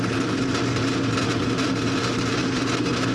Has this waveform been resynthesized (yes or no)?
no